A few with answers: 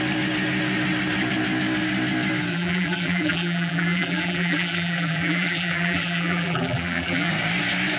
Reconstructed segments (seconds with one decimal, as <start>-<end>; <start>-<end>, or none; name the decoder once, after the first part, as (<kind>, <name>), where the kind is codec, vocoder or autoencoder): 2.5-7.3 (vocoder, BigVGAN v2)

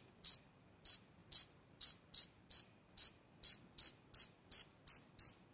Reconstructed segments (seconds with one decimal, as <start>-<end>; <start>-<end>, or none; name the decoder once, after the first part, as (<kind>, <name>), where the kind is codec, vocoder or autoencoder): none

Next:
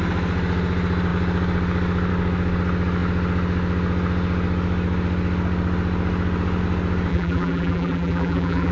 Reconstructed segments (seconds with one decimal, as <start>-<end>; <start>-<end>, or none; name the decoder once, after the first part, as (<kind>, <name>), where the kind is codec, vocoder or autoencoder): 7.1-8.7 (vocoder, BigVGAN v2)

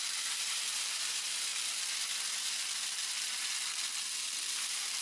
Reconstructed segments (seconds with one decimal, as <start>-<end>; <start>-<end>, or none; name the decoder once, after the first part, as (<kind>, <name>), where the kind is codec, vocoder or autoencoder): 0.0-1.5 (vocoder, BigVGAN v2); 4.5-5.0

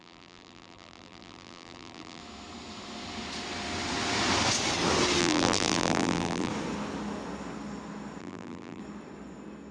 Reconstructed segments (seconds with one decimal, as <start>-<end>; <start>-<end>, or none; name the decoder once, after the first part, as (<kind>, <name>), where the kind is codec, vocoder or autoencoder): 0.0-2.2 (vocoder, BigVGAN v2); 5.2-6.5; 8.2-8.8

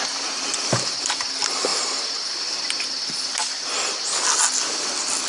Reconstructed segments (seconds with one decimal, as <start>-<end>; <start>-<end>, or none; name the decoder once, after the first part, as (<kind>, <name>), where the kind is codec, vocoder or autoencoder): none